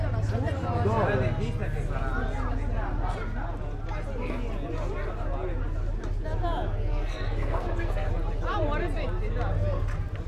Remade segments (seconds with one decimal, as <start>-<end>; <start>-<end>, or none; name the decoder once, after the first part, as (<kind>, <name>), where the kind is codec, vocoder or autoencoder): 6.9-8.1 (codec, SNAC)